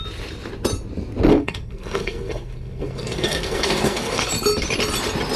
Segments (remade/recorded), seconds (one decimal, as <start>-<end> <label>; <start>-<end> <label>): 0.0-1.3 recorded; 1.3-4.3 remade; 4.3-5.4 recorded